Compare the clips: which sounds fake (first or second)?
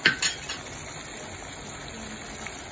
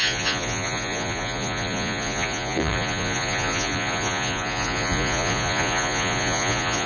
second